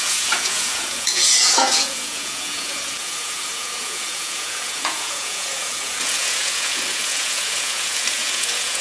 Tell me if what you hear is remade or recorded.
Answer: remade